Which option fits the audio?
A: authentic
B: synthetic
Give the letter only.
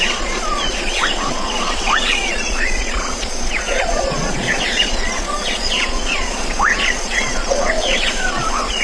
B